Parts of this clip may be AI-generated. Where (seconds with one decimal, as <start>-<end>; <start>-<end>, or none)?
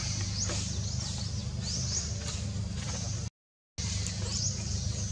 none